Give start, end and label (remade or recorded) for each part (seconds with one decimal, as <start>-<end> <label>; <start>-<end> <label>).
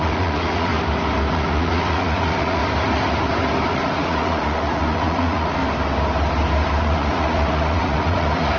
0.0-0.7 remade; 0.7-1.3 recorded; 1.3-2.6 remade; 2.6-3.7 recorded; 3.7-5.6 remade; 5.6-6.8 recorded; 6.8-8.6 remade